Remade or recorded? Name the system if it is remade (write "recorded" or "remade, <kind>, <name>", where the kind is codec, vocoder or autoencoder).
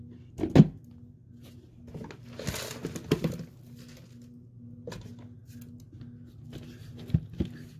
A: recorded